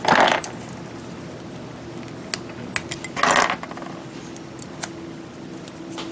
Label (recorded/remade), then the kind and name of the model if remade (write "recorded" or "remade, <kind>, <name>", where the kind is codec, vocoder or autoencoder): recorded